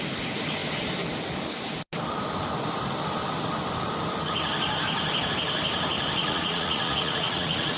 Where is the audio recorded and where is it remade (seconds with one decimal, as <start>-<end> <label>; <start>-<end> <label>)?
0.0-6.2 recorded; 6.2-7.8 remade